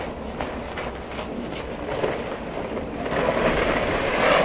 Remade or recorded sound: recorded